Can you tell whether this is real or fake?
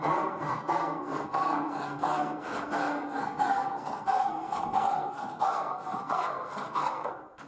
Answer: fake